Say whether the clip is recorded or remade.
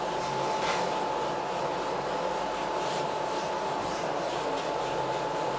recorded